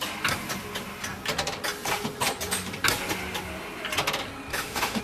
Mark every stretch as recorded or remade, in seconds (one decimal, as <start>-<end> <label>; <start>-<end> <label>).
0.0-4.5 recorded; 4.5-5.0 remade